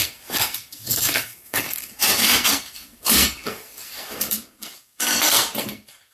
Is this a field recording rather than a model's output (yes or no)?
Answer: no